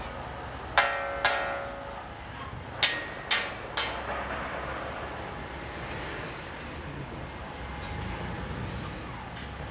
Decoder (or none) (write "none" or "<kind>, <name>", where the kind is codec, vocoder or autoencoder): none